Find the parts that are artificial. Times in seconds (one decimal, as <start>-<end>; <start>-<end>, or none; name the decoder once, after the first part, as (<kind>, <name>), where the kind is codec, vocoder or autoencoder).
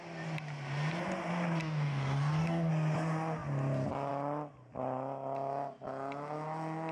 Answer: 1.6-2.7 (codec, DAC)